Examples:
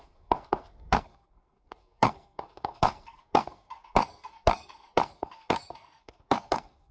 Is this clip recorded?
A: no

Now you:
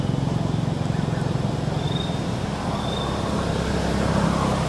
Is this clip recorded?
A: yes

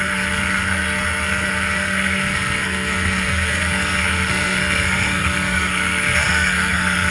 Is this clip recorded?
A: no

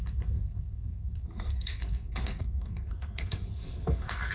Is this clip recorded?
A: no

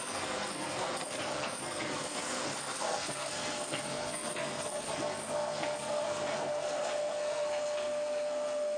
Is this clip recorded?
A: no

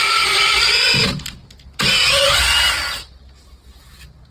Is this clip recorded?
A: yes